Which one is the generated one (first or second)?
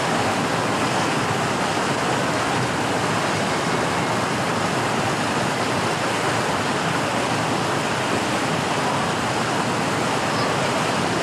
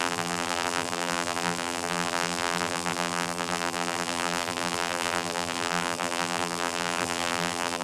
second